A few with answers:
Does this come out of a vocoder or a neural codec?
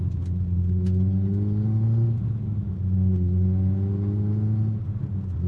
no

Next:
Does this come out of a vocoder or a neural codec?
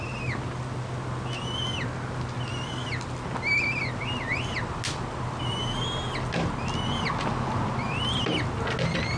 no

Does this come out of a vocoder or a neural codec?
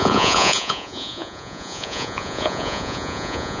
yes